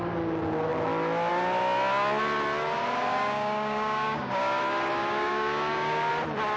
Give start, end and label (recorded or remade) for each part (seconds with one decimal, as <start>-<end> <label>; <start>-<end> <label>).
0.0-3.1 recorded; 3.1-4.6 remade; 4.6-5.0 recorded; 5.0-6.1 remade; 6.1-6.6 recorded